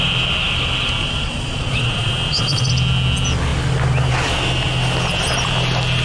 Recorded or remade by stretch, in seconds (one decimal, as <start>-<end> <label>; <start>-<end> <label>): 0.0-1.0 recorded; 1.0-2.7 remade; 2.7-6.0 recorded